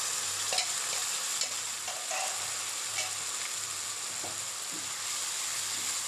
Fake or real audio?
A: real